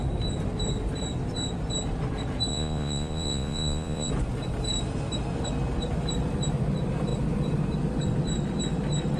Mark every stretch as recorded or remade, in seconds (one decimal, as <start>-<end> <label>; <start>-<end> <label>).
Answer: 0.0-2.5 recorded; 2.5-4.1 remade; 4.1-9.2 recorded